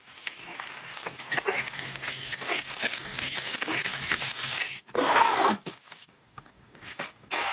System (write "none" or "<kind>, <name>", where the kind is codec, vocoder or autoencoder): codec, DAC